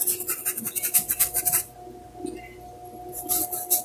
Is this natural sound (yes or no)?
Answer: yes